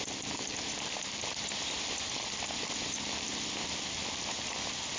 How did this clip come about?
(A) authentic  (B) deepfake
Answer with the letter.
A